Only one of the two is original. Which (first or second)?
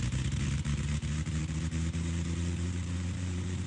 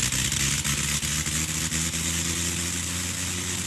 second